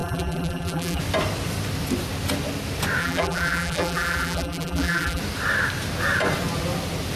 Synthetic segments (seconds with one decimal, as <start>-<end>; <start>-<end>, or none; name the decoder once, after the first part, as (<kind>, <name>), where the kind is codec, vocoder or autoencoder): 0.0-1.0 (vocoder, BigVGAN v2); 3.0-5.2